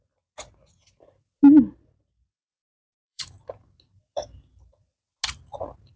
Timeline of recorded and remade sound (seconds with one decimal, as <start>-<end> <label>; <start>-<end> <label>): 0.0-2.3 recorded; 2.3-3.4 remade; 3.4-6.0 recorded